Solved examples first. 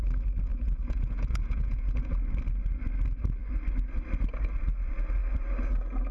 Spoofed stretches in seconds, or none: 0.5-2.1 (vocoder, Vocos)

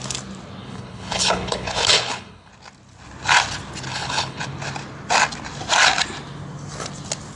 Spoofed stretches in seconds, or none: 0.6-2.5 (codec, HILCodec); 3.9-4.4

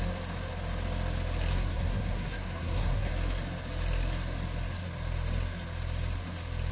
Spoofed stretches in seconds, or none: 1.5-3.1 (codec, SNAC)

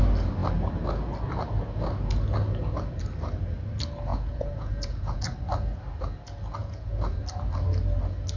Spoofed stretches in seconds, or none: 4.1-5.2 (vocoder, Vocos); 6.6-7.2